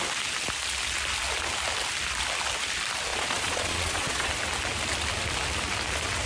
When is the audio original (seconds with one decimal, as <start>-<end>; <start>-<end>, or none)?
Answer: 0.0-3.1; 4.3-6.3